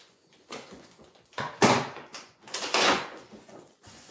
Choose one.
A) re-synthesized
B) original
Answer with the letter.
A